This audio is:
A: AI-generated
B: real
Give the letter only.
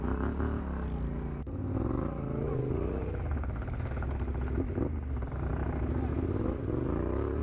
B